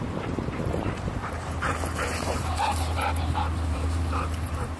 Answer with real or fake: fake